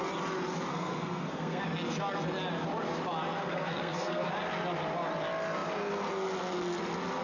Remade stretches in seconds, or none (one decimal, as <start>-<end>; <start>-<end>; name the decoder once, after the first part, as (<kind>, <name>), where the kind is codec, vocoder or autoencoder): 0.7-1.6 (codec, SNAC); 3.4-4.3